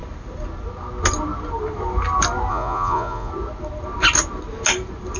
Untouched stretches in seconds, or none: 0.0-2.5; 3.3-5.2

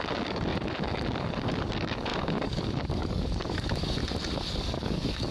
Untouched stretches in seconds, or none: 4.0-4.6

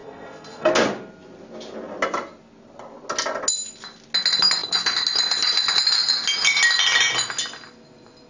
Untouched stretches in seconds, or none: 0.7-8.3

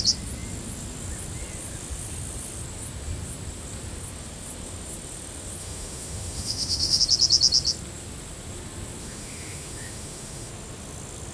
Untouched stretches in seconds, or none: 0.0-5.6; 7.0-9.0; 10.5-11.3

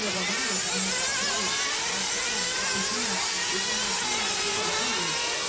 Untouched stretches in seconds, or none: 0.0-5.5